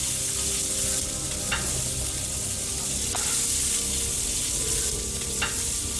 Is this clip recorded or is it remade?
recorded